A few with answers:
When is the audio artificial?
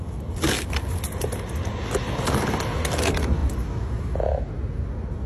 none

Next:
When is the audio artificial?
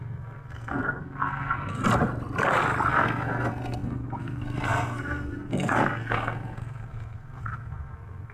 0.0-1.8 (codec, SNAC); 2.9-8.3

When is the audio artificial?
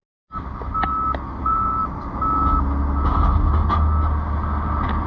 1.4-1.8 (vocoder, Vocos)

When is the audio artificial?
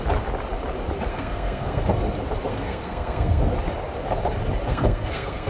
1.1-1.8 (codec, SNAC); 2.5-3.5; 4.7-5.5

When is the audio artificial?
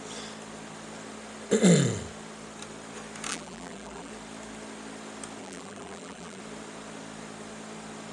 3.3-4.1 (vocoder, BigVGAN v2); 5.4-6.4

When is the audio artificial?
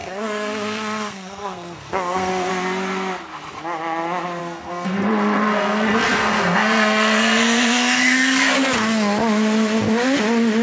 0.0-2.5 (codec, SNAC); 4.4-8.5